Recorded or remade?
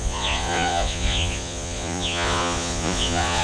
remade